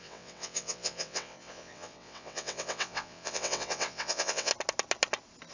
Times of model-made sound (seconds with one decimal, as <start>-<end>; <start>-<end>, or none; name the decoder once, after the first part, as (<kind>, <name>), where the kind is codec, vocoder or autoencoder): 0.0-4.5 (vocoder, WaveNeXt)